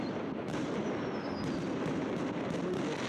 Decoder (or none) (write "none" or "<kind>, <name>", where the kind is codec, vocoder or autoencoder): none